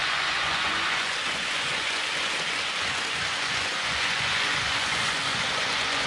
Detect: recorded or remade remade